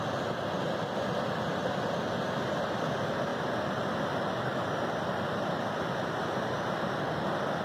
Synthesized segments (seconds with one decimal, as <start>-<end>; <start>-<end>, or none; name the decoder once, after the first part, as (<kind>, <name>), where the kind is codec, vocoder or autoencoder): 3.3-4.0 (vocoder, BigVGAN v2)